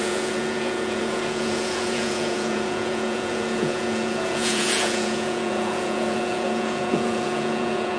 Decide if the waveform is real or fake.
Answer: fake